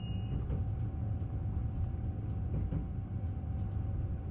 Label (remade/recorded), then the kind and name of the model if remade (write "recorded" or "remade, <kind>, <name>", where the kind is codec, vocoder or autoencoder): recorded